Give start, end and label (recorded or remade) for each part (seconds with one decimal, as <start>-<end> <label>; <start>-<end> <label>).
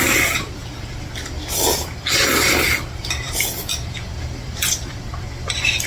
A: 0.0-0.6 remade; 0.6-2.3 recorded; 2.3-5.9 remade